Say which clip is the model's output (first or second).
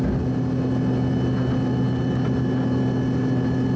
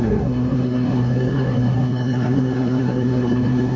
second